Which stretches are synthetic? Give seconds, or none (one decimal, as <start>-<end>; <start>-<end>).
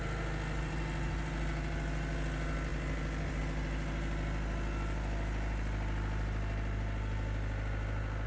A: 2.7-3.4